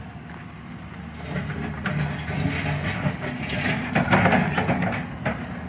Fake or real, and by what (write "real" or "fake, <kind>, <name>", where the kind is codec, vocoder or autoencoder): real